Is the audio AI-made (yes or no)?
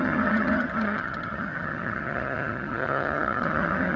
yes